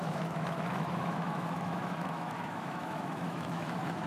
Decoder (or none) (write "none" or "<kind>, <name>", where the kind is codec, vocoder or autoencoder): autoencoder, DAC-VAE